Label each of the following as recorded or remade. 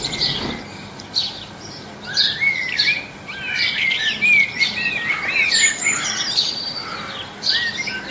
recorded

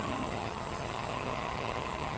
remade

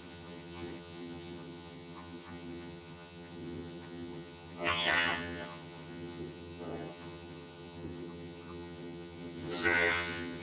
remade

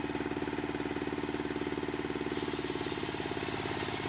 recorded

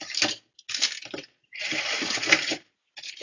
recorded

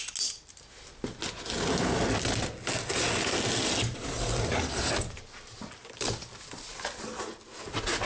recorded